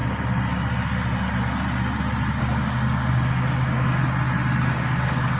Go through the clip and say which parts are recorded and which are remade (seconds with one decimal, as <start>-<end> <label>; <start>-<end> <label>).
0.0-2.4 recorded; 2.4-4.0 remade; 4.0-4.7 recorded; 4.7-5.4 remade